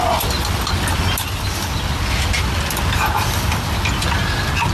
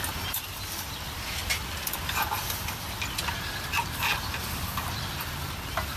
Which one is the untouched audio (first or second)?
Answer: first